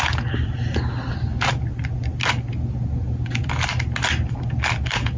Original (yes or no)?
yes